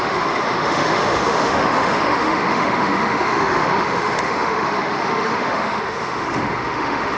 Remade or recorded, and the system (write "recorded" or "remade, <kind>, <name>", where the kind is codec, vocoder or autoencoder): remade, autoencoder, DAC-VAE